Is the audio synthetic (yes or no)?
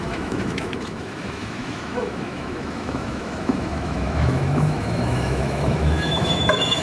yes